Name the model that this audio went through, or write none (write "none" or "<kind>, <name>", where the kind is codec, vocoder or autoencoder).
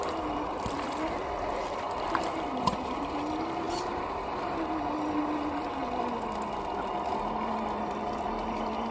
none